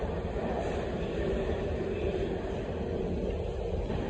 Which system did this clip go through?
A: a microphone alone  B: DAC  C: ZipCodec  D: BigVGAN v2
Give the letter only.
D